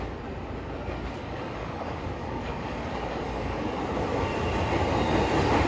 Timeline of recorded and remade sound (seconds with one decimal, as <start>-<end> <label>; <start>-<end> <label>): 0.0-1.2 recorded; 1.2-3.8 remade; 3.8-5.7 recorded